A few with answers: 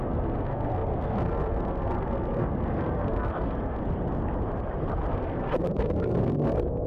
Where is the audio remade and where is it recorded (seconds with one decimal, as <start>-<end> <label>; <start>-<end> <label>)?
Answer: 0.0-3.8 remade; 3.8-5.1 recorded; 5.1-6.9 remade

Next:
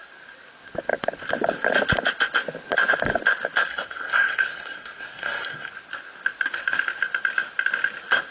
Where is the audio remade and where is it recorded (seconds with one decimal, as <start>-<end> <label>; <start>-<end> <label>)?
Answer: 0.0-3.7 recorded; 3.7-5.7 remade; 5.7-8.3 recorded

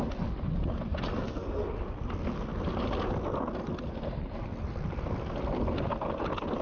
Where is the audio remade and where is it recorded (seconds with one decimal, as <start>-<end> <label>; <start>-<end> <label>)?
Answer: 0.0-1.1 recorded; 1.1-1.7 remade; 1.7-6.6 recorded